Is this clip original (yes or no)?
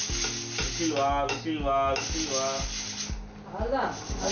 yes